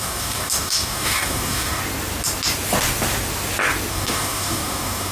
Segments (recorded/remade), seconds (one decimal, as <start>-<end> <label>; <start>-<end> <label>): 0.0-1.8 remade; 1.8-3.9 recorded; 3.9-5.1 remade